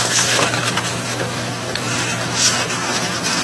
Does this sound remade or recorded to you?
remade